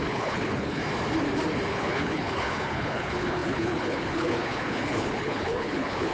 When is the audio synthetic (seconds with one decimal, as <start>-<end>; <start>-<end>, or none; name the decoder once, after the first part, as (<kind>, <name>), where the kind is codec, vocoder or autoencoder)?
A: 0.0-0.8 (codec, HILCodec); 1.7-6.1